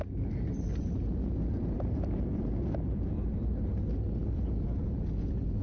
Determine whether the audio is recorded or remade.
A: recorded